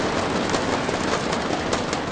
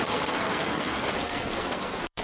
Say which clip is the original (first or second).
first